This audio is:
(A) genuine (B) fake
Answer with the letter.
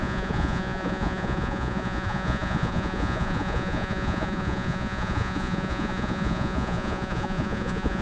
B